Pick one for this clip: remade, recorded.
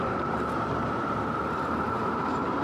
remade